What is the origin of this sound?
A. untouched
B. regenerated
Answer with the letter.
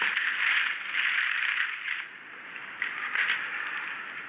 B